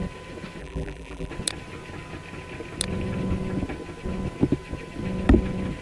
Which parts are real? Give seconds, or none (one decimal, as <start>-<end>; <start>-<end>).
0.0-0.6; 1.3-5.8